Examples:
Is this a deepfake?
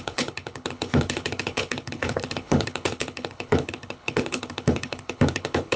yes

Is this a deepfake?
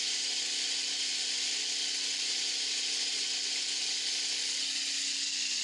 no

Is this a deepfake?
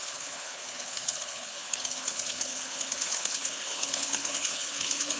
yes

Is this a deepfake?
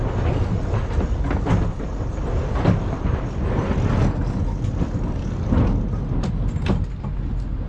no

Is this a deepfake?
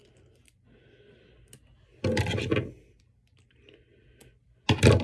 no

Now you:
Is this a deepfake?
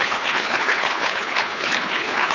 yes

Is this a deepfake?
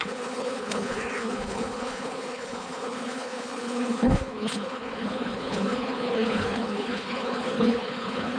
yes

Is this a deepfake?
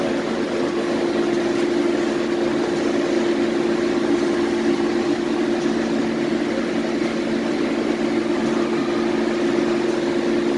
no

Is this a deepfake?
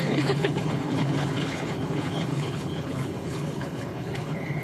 yes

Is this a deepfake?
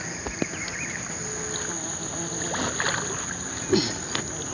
no